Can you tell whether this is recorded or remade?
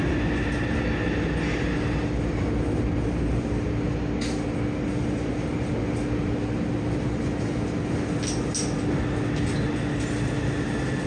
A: recorded